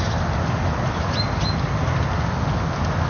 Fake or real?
real